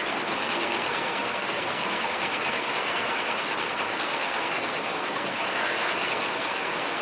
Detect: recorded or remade remade